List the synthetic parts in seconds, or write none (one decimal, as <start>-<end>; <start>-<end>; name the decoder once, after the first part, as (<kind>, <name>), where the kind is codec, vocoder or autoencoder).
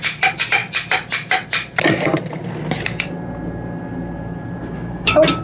4.6-5.4 (codec, DAC)